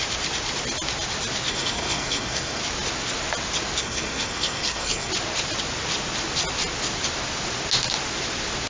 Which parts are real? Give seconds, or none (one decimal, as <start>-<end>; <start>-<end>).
0.0-1.5; 2.6-3.8; 5.1-8.7